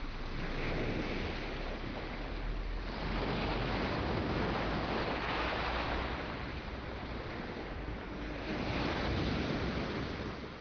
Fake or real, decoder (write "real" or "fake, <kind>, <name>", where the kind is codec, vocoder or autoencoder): real